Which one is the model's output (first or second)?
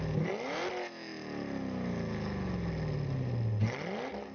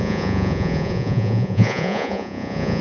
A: second